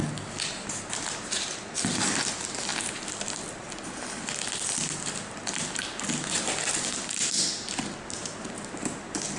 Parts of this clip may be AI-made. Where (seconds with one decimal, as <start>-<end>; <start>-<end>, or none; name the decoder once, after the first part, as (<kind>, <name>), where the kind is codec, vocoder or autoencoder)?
none